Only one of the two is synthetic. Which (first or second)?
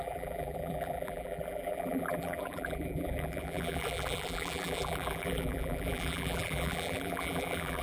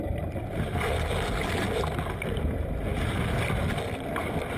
first